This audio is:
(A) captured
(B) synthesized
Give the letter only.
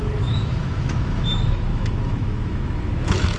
B